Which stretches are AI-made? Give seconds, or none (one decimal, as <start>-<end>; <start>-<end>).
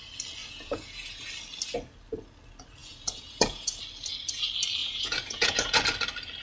0.4-1.3; 2.8-3.8; 4.8-5.8